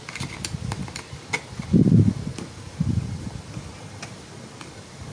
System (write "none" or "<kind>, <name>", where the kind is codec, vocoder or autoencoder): none